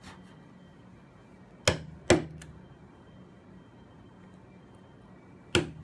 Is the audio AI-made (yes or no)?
no